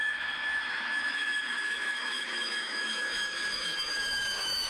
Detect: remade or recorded remade